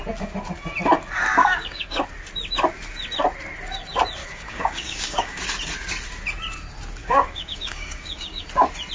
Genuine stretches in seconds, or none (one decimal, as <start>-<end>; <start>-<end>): 0.0-1.4; 2.0-4.2; 5.4-7.0; 8.4-8.9